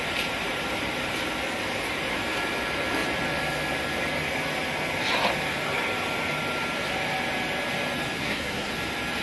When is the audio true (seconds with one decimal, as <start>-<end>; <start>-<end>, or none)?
0.0-8.2; 8.7-9.2